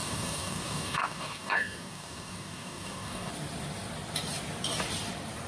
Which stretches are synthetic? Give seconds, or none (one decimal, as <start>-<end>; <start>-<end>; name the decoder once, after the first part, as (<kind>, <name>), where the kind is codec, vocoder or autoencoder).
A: 0.0-3.3 (codec, DAC)